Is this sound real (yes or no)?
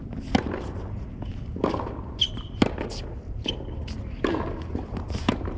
yes